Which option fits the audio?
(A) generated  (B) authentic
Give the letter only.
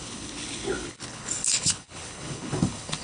A